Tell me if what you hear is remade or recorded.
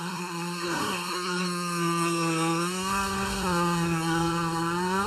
remade